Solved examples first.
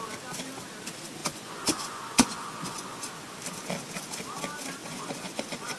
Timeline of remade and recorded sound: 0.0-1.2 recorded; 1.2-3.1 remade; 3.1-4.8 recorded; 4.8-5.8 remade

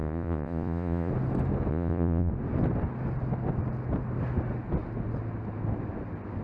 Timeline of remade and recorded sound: 0.0-1.1 remade; 1.1-1.7 recorded; 1.7-2.3 remade; 2.3-6.4 recorded

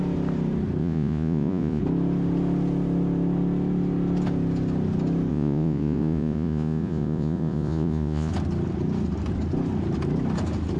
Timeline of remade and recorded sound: 0.0-0.8 recorded; 0.8-1.8 remade; 1.8-5.3 recorded; 5.3-8.3 remade; 8.3-10.8 recorded

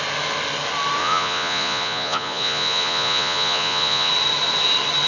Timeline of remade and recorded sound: 0.0-1.0 recorded; 1.0-4.1 remade; 4.1-5.1 recorded

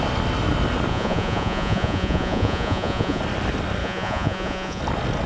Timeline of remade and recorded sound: 0.0-0.9 recorded; 0.9-3.2 remade; 3.2-3.8 recorded; 3.8-4.8 remade; 4.8-5.3 recorded